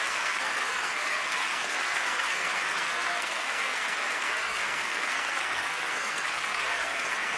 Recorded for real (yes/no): no